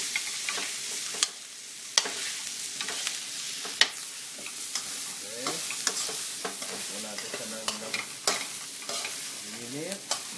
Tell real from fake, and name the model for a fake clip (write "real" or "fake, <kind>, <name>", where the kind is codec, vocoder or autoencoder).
real